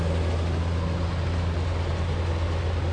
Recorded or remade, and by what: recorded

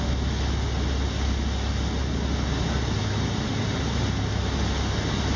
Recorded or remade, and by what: recorded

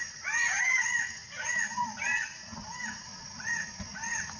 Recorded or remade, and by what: remade, vocoder, Vocos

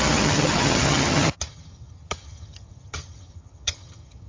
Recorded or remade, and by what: remade, vocoder, HiFi-GAN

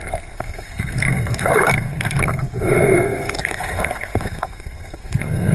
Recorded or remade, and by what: remade, codec, SNAC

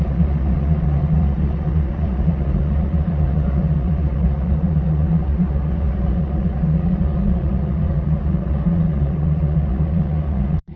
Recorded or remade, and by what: remade, vocoder, Vocos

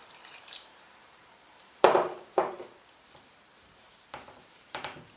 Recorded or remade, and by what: remade, vocoder, BigVGAN v2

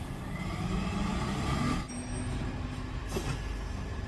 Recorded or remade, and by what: recorded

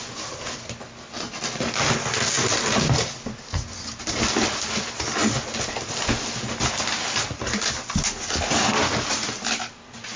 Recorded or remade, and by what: recorded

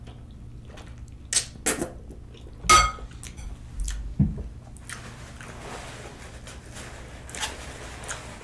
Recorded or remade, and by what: recorded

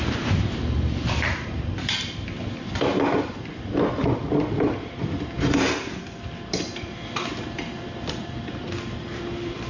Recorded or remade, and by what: remade, vocoder, BigVGAN v2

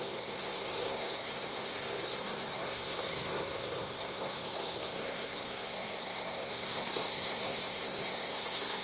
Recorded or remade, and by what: remade, codec, SNAC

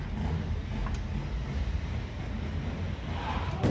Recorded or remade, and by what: recorded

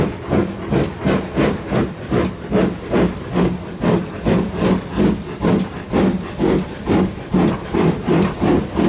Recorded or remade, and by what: recorded